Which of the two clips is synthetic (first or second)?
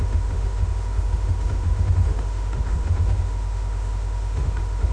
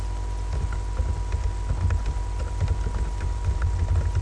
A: first